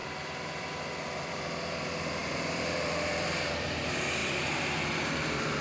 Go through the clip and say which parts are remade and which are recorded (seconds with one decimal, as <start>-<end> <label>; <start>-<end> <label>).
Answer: 0.0-0.8 remade; 0.8-2.2 recorded; 2.2-3.8 remade; 3.8-4.2 recorded; 4.2-5.6 remade